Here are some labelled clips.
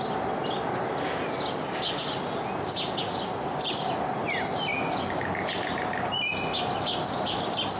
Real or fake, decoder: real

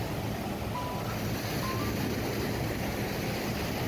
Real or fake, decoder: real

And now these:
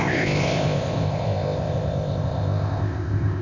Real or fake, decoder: fake, codec, ZipCodec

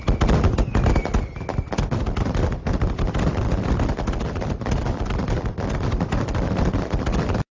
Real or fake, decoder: real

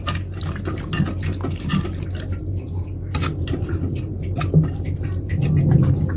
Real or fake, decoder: real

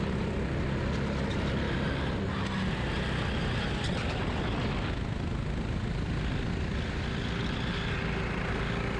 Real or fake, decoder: real